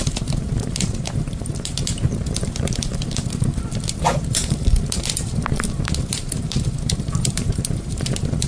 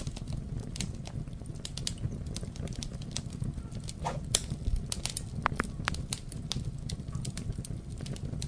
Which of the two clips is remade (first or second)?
first